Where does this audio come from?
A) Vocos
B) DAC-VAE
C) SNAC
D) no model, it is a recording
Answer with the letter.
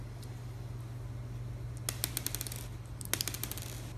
D